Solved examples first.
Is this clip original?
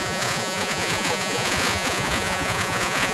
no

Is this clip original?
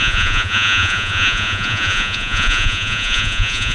no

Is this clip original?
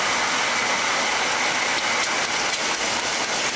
yes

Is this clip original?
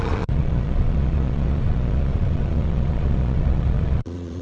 no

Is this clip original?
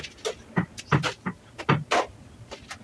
yes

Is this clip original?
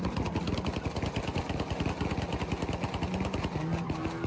yes